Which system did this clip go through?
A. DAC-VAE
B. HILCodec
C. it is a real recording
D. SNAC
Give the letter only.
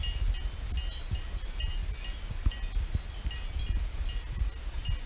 C